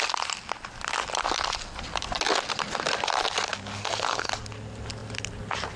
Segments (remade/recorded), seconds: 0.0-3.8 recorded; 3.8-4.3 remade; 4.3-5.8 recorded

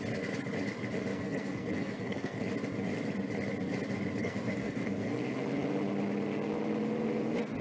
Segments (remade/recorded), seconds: 0.0-1.1 recorded; 1.1-2.4 remade; 2.4-4.2 recorded; 4.2-5.2 remade; 5.2-7.6 recorded

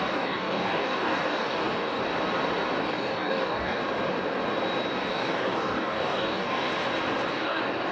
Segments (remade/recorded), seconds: 0.0-2.0 remade; 2.0-2.8 recorded; 2.8-3.8 remade; 3.8-5.1 recorded; 5.1-6.7 remade; 6.7-7.3 recorded; 7.3-7.9 remade

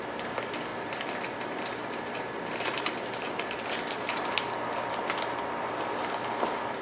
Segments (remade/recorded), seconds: 0.0-0.7 recorded; 0.7-4.5 remade; 4.5-6.8 recorded

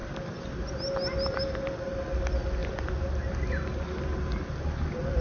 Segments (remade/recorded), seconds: 0.0-5.2 recorded

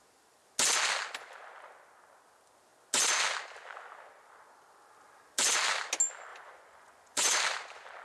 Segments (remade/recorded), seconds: 0.0-6.3 recorded; 6.3-7.4 remade; 7.4-8.0 recorded